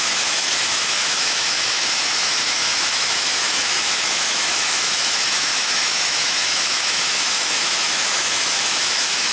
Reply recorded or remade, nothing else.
remade